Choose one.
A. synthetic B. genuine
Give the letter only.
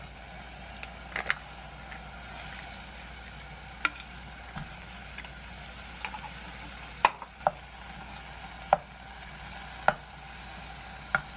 B